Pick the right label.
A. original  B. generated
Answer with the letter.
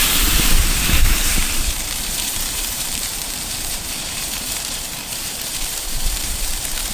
B